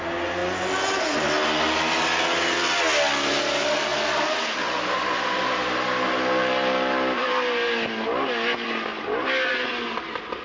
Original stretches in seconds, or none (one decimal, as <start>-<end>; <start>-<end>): 0.0-10.4